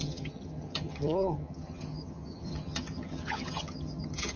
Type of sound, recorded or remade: remade